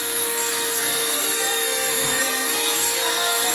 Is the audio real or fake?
fake